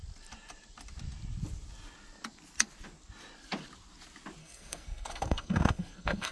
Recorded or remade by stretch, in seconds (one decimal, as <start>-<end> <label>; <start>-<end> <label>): 0.0-4.4 recorded; 4.4-6.3 remade